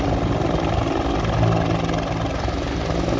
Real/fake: real